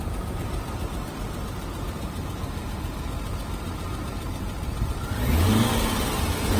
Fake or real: real